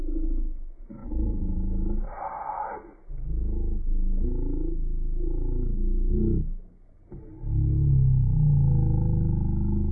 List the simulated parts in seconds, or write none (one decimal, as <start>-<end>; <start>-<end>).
1.0-2.7